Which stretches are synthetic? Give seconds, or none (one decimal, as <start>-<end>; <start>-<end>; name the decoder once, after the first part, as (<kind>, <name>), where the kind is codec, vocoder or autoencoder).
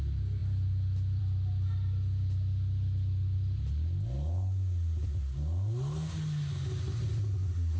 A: none